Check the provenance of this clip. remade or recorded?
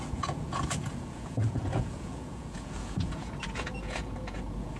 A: remade